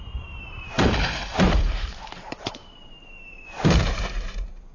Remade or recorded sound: remade